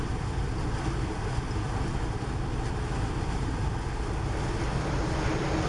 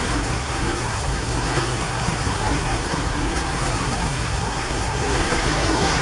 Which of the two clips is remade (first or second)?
second